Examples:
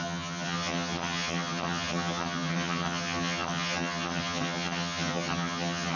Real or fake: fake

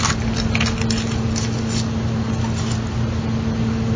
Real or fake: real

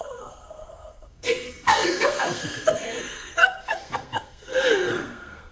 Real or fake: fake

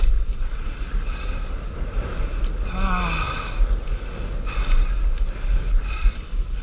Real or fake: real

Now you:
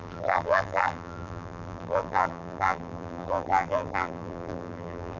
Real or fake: fake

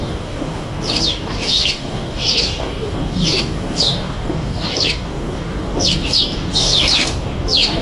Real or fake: fake